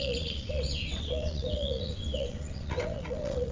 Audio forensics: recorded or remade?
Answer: remade